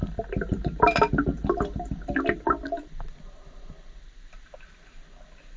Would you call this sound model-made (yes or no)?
no